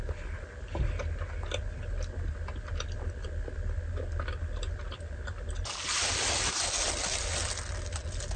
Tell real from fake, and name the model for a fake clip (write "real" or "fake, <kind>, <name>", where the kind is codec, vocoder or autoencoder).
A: real